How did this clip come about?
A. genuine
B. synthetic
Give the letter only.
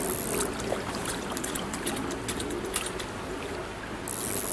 A